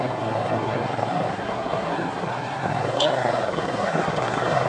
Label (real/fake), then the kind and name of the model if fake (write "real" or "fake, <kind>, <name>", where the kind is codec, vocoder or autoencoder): fake, codec, SNAC